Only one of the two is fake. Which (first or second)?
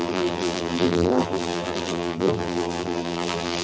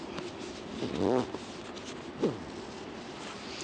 first